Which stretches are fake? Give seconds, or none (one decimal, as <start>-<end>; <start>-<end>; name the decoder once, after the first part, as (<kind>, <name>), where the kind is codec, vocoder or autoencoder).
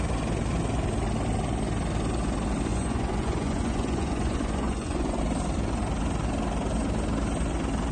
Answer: 2.7-5.2 (vocoder, Vocos)